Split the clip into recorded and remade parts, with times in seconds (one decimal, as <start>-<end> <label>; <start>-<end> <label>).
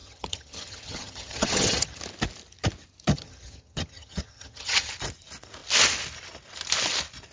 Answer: 0.0-2.0 remade; 2.0-3.1 recorded; 3.1-4.9 remade; 4.9-7.3 recorded